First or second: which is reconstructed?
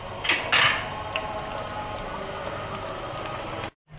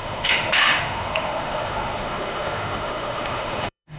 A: second